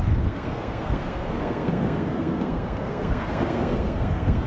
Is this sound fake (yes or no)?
yes